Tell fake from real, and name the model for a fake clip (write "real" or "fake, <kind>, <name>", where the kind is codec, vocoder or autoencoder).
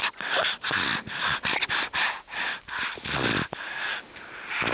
real